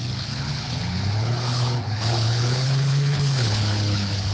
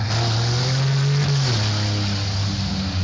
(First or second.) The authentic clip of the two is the second